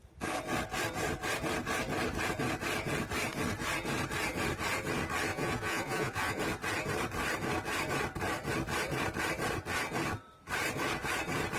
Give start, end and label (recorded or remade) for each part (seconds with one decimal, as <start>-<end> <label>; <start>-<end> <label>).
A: 0.0-5.3 recorded; 5.3-6.4 remade; 6.4-11.6 recorded